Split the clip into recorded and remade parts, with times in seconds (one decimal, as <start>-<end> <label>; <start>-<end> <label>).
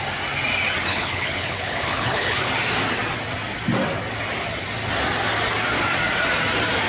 0.0-0.9 recorded; 0.9-2.5 remade; 2.5-6.9 recorded